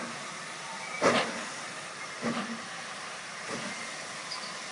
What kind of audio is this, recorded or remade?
recorded